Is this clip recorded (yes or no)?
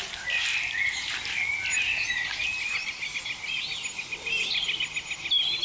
yes